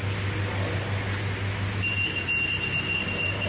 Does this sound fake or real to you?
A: real